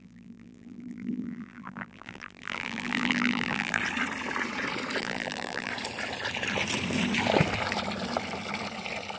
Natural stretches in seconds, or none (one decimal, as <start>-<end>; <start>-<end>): 3.8-5.0; 5.7-9.2